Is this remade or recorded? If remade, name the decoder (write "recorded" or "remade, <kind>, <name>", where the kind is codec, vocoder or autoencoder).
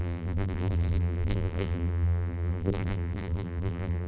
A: remade, vocoder, BigVGAN v2